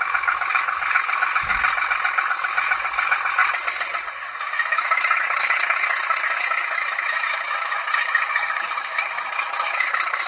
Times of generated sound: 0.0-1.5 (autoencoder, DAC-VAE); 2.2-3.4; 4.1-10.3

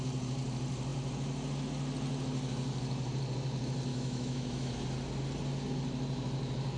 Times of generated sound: 3.9-4.7 (autoencoder, DAC-VAE)

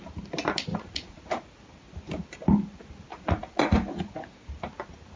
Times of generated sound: 0.7-1.2 (vocoder, Vocos); 3.1-4.1

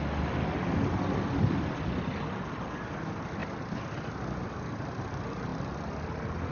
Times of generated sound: 3.4-4.1 (vocoder, BigVGAN v2)

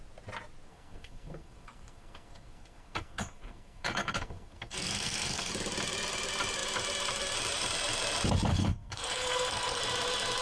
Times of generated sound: 0.7-5.5 (codec, SNAC); 8.5-9.8

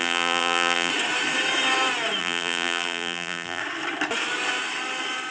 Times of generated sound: 0.0-0.9 (vocoder, BigVGAN v2); 2.2-3.6